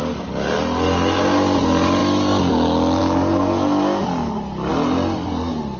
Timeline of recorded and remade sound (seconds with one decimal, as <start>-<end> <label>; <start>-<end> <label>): 0.0-5.8 recorded